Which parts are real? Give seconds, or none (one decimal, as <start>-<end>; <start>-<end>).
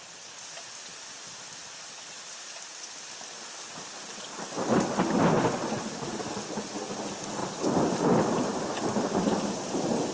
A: 0.0-7.4; 8.5-10.1